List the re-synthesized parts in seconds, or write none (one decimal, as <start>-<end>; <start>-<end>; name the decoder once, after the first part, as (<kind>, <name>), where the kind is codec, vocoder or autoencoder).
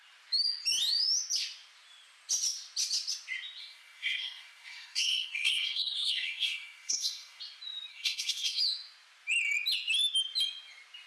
3.6-7.4 (codec, SNAC); 7.9-8.6